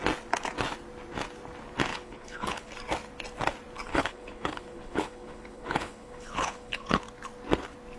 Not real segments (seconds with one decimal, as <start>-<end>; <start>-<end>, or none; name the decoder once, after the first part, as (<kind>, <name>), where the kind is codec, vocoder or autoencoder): 1.9-2.7 (codec, HILCodec); 3.9-7.0